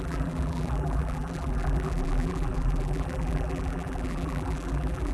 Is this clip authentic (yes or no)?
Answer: no